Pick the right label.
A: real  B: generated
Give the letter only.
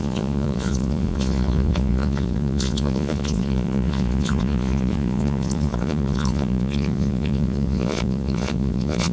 B